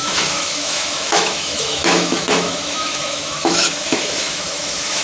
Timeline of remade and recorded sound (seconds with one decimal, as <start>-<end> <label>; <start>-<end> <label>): 0.0-5.0 remade